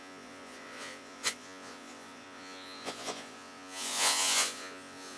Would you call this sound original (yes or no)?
no